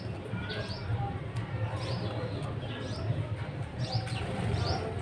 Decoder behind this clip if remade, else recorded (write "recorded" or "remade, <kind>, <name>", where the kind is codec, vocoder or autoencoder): recorded